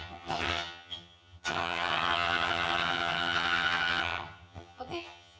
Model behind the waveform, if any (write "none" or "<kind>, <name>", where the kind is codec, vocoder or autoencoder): vocoder, HiFi-GAN